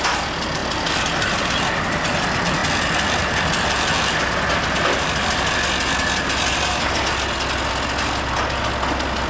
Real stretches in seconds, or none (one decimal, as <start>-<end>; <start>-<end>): 0.0-9.3